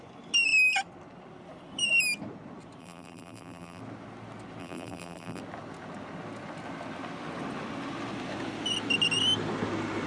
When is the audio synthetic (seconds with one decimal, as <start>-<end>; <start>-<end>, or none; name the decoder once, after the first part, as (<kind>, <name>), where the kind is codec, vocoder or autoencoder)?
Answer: 2.8-3.8 (vocoder, BigVGAN v2); 4.6-5.4